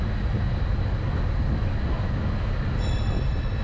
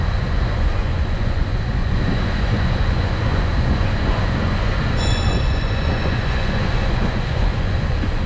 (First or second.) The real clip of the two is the first